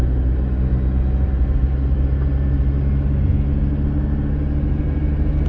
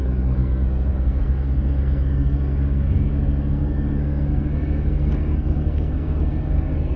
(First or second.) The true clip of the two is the first